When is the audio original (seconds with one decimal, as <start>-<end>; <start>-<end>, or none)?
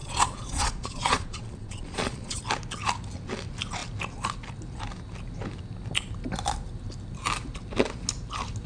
2.4-8.7